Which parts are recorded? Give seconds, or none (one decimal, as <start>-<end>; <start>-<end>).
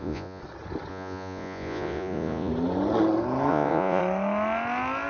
0.4-0.9; 2.5-3.5; 4.0-5.1